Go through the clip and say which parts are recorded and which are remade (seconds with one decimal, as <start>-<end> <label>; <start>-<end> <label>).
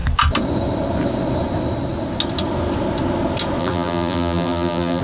0.0-3.6 recorded; 3.6-5.0 remade